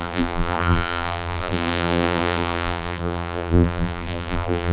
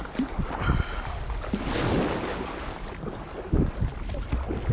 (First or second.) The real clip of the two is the second